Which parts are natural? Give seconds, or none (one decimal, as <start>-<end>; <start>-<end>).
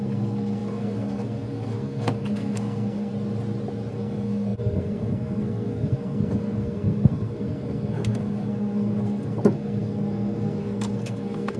3.1-3.9